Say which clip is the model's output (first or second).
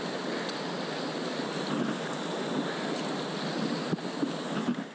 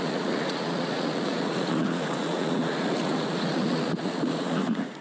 second